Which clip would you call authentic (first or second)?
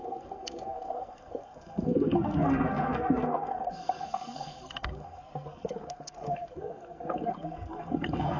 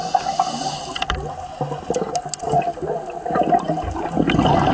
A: second